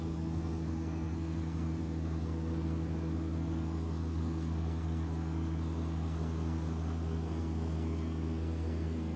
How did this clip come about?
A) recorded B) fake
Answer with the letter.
B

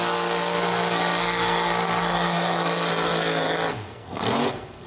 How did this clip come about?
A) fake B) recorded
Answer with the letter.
A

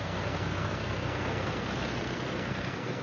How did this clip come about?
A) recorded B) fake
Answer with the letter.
B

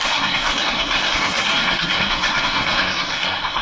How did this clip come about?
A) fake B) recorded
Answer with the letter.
A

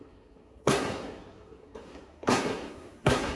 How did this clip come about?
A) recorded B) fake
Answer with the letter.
B